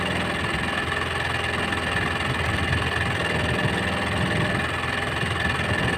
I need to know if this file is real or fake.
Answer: real